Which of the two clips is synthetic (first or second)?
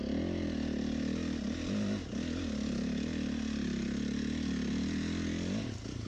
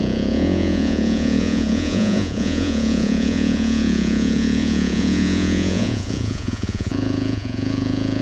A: second